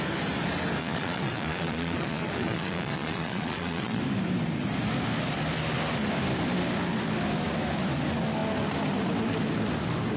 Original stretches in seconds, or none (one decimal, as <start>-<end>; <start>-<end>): 0.0-0.8; 4.0-10.2

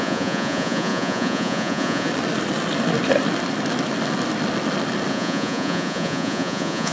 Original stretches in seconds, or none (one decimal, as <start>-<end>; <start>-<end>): 2.1-5.1

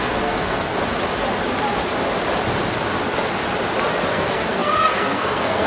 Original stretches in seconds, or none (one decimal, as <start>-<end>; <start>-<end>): 0.7-4.1

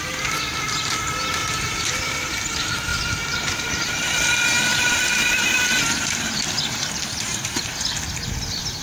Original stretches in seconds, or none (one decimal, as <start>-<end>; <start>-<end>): 0.0-1.4; 2.3-2.9; 4.3-4.7; 7.7-8.8

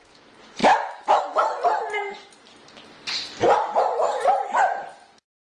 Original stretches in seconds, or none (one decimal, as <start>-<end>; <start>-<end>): 0.0-0.6; 1.2-5.4